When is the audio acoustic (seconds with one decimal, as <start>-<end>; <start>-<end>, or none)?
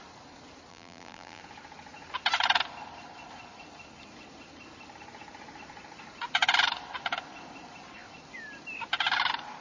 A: 0.0-0.7; 1.4-9.6